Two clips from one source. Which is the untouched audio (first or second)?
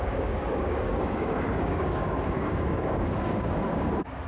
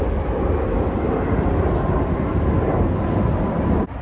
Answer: second